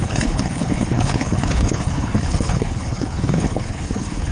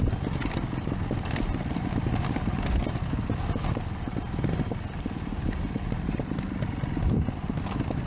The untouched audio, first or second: second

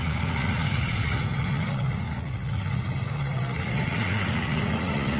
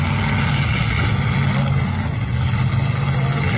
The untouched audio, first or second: second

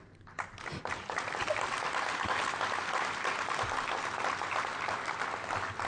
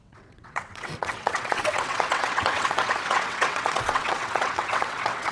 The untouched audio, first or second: first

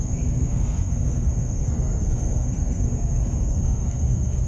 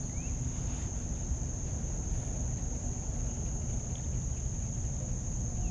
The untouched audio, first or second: second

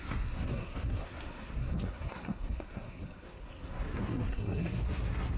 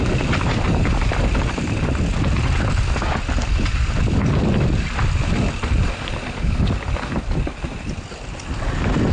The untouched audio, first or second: second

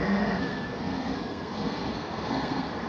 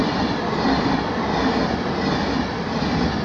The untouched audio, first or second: second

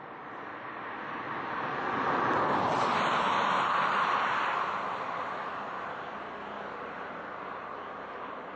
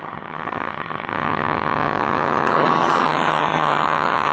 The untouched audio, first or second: first